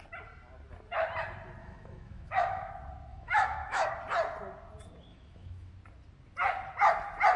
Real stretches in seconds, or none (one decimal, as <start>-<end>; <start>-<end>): 0.0-1.6; 2.7-3.1; 3.9-5.1; 5.7-7.4